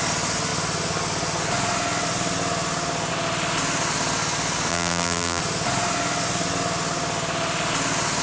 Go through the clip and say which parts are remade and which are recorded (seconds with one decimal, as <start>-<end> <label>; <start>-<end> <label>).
0.0-4.7 recorded; 4.7-5.4 remade; 5.4-8.2 recorded